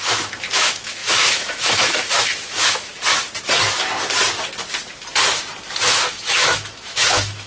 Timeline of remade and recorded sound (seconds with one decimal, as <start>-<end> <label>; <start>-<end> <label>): 0.0-2.9 remade; 2.9-6.1 recorded; 6.1-7.5 remade